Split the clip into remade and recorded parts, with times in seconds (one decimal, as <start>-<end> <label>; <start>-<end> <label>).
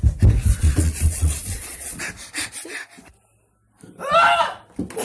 0.0-0.6 recorded; 0.6-2.0 remade; 2.0-5.0 recorded